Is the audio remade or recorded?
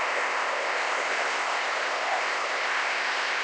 remade